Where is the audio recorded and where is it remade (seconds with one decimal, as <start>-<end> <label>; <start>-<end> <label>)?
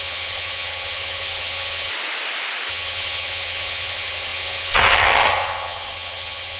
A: 0.0-1.9 remade; 1.9-2.7 recorded; 2.7-6.6 remade